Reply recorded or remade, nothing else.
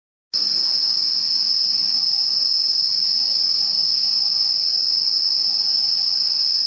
recorded